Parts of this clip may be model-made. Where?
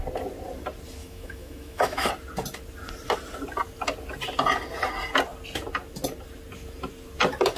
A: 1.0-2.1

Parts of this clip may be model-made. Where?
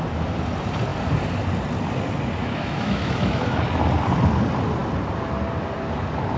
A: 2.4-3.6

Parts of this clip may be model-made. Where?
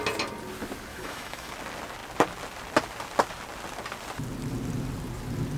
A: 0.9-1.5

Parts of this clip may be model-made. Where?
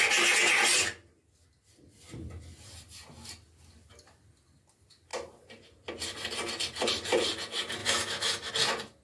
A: 7.8-8.5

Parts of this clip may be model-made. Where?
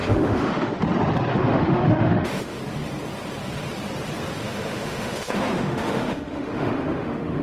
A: 0.0-0.8; 1.3-2.6; 4.4-7.4